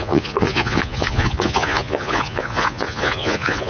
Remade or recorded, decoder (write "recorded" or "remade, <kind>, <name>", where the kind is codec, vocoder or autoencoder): remade, vocoder, Vocos